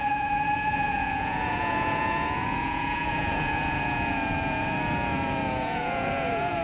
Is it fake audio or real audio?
fake